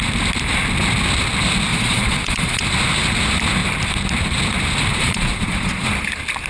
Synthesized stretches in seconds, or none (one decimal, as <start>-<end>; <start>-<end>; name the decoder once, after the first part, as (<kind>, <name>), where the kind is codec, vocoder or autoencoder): 1.7-2.6 (vocoder, Vocos); 4.9-5.9